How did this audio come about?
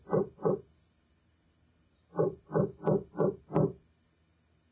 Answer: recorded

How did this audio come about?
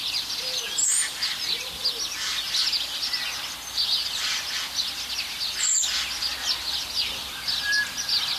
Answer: recorded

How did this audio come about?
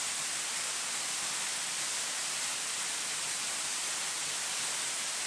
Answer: recorded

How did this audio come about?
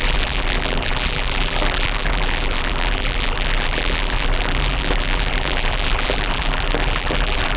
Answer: remade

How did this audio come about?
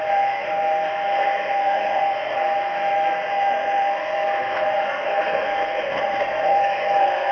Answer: remade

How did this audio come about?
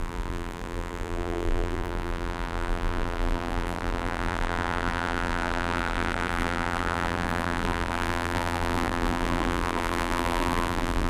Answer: remade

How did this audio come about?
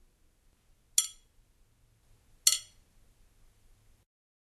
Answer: recorded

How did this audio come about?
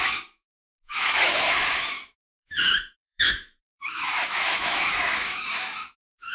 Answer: remade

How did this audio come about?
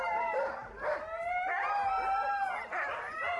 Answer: recorded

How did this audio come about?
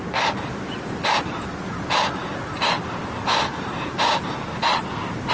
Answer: recorded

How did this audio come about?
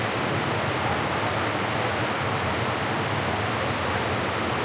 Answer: recorded